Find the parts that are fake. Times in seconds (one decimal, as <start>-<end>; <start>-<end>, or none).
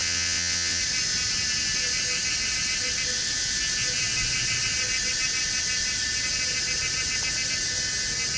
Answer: 0.0-0.8